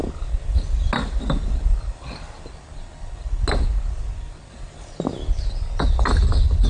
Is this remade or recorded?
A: recorded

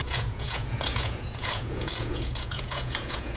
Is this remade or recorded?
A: remade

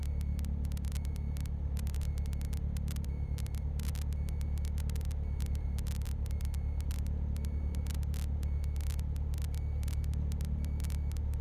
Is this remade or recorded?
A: recorded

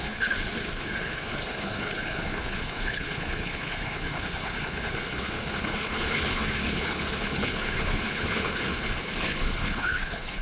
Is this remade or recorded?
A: remade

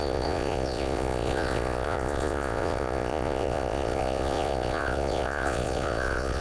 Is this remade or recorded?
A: remade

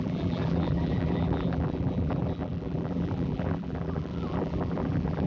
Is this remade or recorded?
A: remade